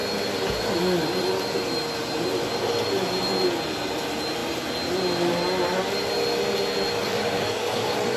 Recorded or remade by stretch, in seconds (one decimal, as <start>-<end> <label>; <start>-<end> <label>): 0.0-7.0 recorded; 7.0-8.2 remade